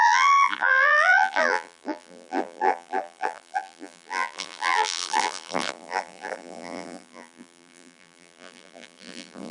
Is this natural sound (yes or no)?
no